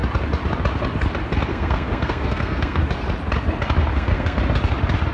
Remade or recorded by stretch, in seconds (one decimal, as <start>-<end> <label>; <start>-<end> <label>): 0.0-1.5 recorded; 1.5-2.8 remade; 2.8-3.9 recorded; 3.9-4.4 remade; 4.4-5.1 recorded

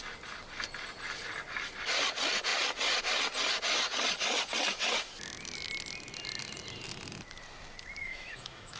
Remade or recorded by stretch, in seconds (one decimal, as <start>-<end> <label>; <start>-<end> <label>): 0.0-8.0 recorded; 8.0-8.8 remade

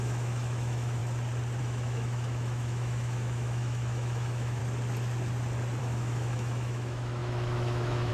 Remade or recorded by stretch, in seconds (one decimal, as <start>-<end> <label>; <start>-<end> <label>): 0.0-1.0 remade; 1.0-1.6 recorded; 1.6-4.6 remade; 4.6-5.8 recorded; 5.8-8.1 remade

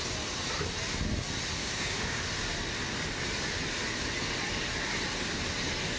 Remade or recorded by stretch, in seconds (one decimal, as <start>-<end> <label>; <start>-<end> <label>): 0.0-1.6 recorded; 1.6-2.2 remade; 2.2-6.0 recorded

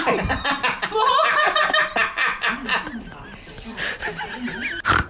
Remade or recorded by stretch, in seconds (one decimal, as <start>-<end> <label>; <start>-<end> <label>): 0.0-1.1 recorded; 1.1-4.2 remade; 4.2-5.1 recorded

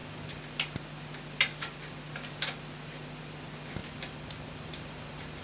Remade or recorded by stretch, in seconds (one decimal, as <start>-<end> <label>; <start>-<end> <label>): 0.0-5.4 recorded